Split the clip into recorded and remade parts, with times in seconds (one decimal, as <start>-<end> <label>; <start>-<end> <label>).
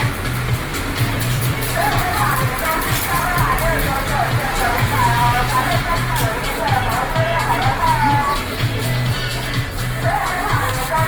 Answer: 0.0-0.7 recorded; 0.7-5.3 remade; 5.3-8.2 recorded; 8.2-8.8 remade; 8.8-11.1 recorded